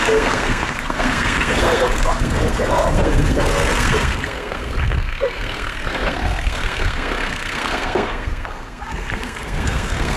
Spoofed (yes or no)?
yes